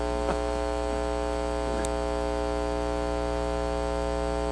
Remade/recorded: recorded